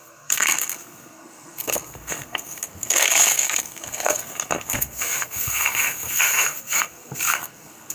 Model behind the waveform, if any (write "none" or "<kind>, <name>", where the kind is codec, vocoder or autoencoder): codec, SNAC